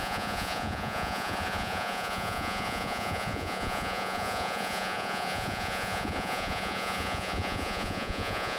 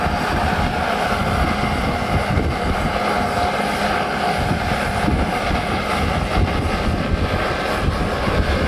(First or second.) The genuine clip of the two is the second